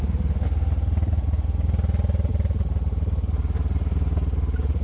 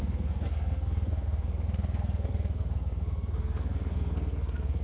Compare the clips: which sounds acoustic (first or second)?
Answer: first